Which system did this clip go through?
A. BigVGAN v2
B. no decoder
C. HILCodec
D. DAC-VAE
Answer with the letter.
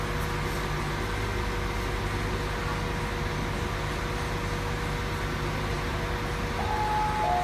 B